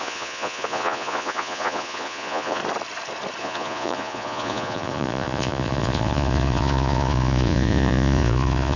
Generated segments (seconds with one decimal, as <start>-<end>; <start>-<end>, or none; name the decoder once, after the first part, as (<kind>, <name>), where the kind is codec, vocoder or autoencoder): 0.0-2.6 (vocoder, Vocos); 3.4-8.8